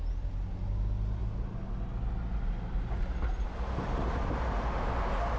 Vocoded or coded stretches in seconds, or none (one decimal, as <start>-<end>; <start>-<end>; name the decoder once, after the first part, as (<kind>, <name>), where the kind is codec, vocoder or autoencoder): none